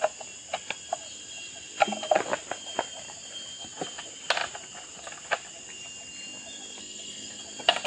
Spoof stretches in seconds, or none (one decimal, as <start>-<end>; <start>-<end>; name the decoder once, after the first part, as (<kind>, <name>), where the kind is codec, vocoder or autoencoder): 6.8-7.4 (codec, SNAC)